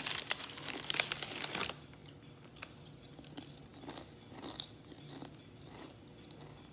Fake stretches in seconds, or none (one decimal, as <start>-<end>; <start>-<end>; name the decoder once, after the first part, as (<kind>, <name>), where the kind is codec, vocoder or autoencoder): none